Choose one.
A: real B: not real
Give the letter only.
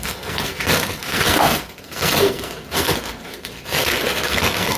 B